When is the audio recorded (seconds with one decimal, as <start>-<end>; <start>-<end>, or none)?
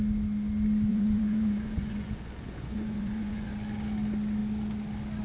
0.0-0.9; 3.5-5.2